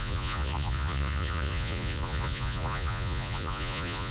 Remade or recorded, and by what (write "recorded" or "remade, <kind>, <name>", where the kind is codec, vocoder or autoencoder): remade, vocoder, Vocos